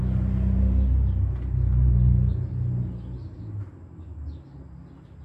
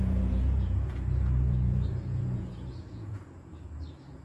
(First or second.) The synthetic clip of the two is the second